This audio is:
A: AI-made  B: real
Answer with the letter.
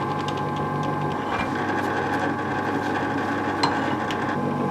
B